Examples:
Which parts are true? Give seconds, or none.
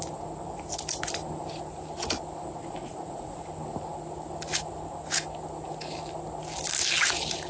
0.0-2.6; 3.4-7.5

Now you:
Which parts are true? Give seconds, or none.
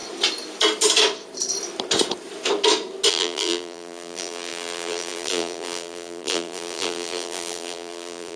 0.0-3.1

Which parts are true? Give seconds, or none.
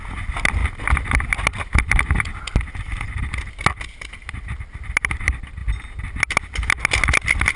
0.0-7.6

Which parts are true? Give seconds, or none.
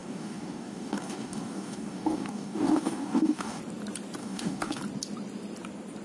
3.6-4.2; 4.8-6.0